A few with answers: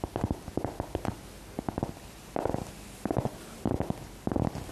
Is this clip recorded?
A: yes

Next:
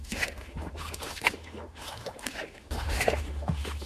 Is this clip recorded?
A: no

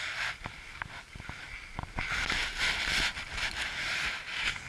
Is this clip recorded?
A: yes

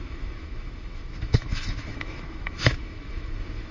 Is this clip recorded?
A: no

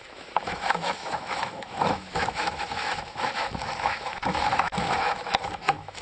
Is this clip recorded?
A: no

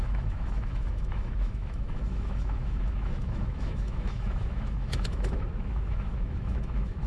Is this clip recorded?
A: no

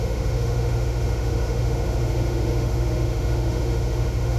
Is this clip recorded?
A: no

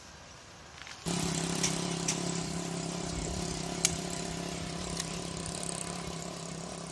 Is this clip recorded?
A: yes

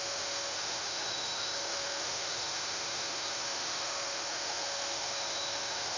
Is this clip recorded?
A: no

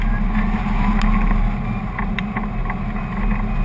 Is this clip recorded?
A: yes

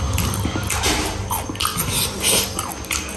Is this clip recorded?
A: yes